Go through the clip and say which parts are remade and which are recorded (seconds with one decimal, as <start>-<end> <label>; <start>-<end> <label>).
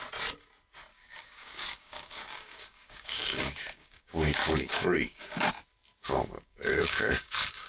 0.0-0.9 recorded; 0.9-5.5 remade; 5.5-6.0 recorded; 6.0-7.7 remade